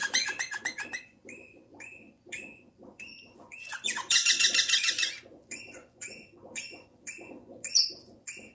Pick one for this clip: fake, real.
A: fake